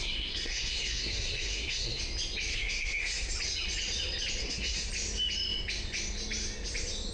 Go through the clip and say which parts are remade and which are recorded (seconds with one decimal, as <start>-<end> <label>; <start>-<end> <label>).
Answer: 0.0-2.0 remade; 2.0-2.5 recorded; 2.5-3.3 remade; 3.3-4.4 recorded; 4.4-4.9 remade; 4.9-7.1 recorded